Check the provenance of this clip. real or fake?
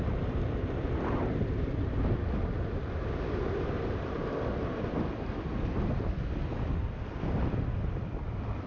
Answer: real